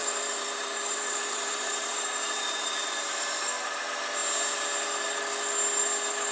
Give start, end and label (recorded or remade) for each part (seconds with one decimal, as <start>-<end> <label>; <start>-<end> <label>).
0.0-3.8 remade; 3.8-6.3 recorded